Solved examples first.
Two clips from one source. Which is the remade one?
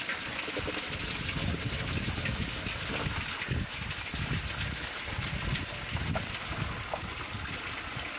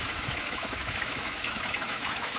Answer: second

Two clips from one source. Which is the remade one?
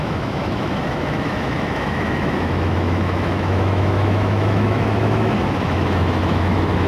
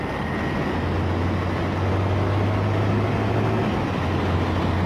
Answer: first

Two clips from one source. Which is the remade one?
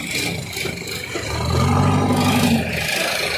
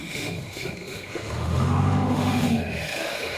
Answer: second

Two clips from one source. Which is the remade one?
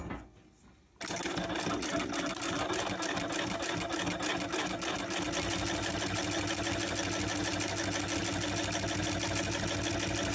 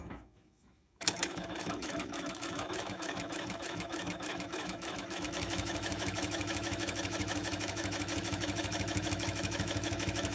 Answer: second